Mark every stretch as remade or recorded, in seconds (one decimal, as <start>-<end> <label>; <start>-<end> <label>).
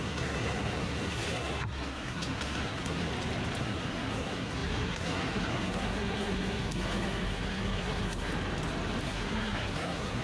0.0-3.1 remade; 3.1-3.6 recorded; 3.6-8.3 remade; 8.3-9.0 recorded; 9.0-10.2 remade